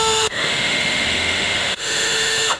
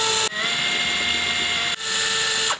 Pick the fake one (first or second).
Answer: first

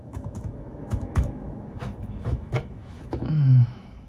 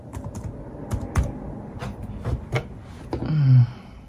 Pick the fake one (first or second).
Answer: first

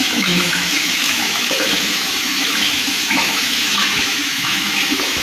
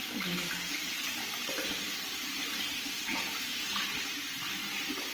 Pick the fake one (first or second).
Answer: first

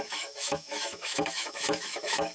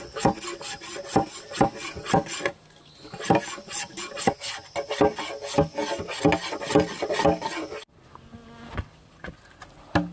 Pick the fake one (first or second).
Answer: first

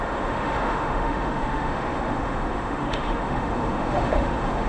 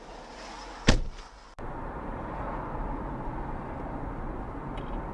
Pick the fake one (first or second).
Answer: first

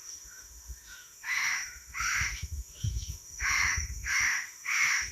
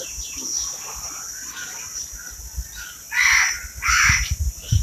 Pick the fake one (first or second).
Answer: first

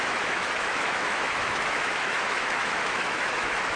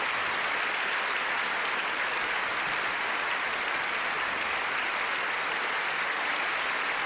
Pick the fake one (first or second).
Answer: first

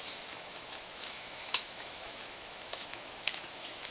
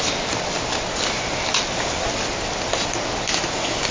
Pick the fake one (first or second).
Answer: first